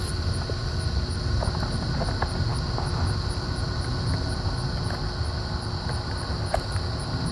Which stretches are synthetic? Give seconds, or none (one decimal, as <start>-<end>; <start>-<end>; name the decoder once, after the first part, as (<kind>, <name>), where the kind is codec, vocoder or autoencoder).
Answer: none